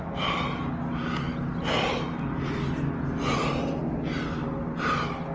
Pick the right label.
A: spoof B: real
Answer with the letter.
B